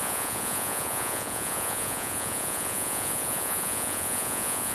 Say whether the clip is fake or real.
fake